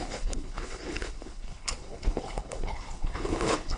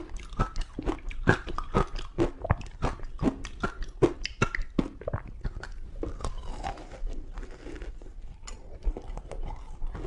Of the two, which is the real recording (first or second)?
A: second